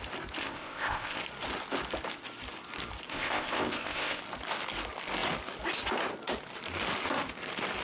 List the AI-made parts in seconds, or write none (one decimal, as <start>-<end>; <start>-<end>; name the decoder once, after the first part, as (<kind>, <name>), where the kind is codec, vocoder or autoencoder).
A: 0.4-1.2 (codec, ZipCodec); 3.1-4.2